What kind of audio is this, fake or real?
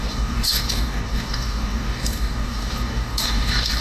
fake